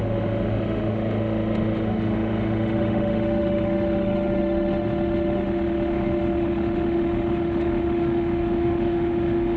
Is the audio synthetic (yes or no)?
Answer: yes